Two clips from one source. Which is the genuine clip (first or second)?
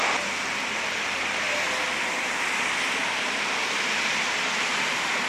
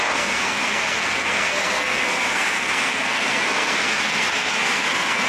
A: first